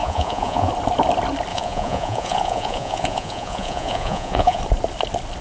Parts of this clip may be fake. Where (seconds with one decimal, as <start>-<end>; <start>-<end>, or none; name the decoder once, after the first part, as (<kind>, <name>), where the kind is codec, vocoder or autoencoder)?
0.0-0.7 (vocoder, Vocos); 1.5-4.6